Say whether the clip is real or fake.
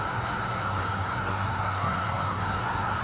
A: fake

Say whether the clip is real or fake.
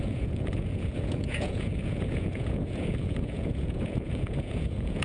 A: fake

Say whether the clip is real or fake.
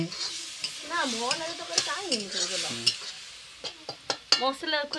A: real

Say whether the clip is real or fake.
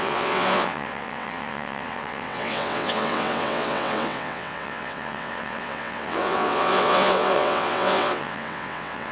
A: fake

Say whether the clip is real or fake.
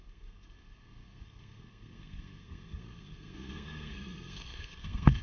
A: fake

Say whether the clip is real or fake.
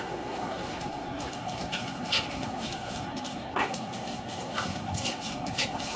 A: fake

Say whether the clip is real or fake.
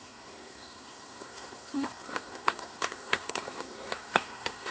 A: fake